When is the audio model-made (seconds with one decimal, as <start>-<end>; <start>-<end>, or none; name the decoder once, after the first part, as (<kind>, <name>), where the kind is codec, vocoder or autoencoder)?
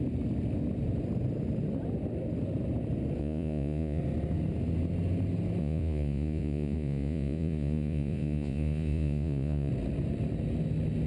3.2-4.0 (vocoder, Vocos); 5.6-9.7